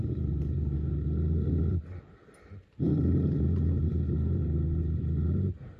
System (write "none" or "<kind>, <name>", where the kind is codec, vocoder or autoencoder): none